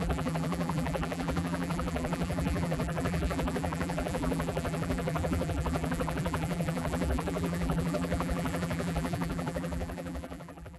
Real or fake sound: fake